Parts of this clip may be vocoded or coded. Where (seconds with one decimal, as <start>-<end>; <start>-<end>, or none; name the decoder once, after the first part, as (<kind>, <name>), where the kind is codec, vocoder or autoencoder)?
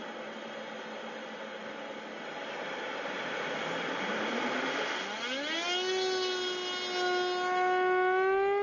none